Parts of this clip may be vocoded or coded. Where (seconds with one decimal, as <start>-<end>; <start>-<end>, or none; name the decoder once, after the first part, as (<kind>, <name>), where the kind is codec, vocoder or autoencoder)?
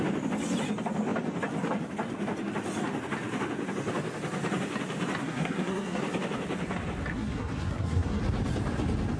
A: 5.2-6.0 (codec, SNAC); 7.1-8.2